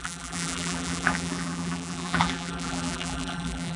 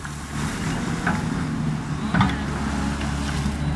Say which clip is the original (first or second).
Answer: second